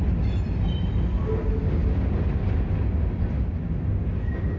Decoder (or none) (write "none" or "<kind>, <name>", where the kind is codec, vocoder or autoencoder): none